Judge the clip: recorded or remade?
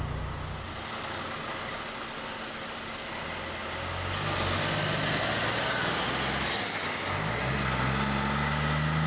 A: recorded